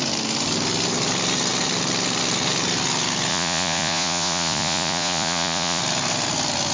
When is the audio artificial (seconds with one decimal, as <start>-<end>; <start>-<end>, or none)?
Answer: 3.3-5.8